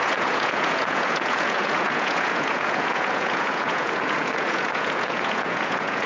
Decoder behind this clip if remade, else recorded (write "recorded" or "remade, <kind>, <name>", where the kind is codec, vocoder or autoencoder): remade, vocoder, Vocos